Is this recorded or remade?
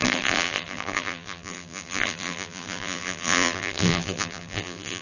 remade